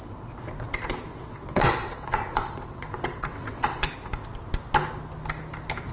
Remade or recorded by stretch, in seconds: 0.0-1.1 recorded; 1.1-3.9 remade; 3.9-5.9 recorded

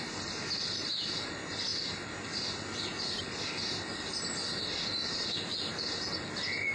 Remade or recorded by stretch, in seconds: 0.0-6.7 recorded

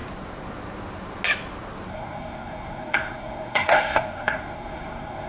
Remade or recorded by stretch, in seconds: 0.0-1.9 recorded; 1.9-5.3 remade

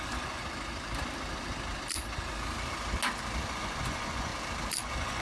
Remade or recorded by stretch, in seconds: 0.0-0.4 remade; 0.4-3.5 recorded; 3.5-4.3 remade; 4.3-4.8 recorded; 4.8-5.2 remade

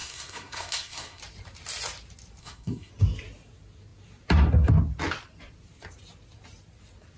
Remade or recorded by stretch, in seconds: 0.0-1.2 remade; 1.2-2.4 recorded; 2.4-2.9 remade; 2.9-7.2 recorded